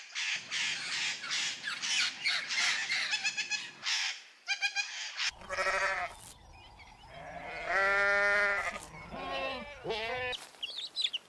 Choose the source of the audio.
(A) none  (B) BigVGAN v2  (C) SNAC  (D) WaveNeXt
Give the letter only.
A